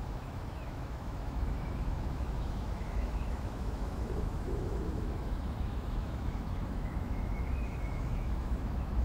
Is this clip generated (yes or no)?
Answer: yes